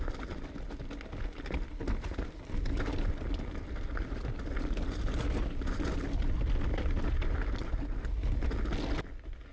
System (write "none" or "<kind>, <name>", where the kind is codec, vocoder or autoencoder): none